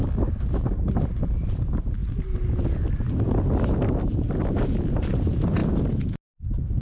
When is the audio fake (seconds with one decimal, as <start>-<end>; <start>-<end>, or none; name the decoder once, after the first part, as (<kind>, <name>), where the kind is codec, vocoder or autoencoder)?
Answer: none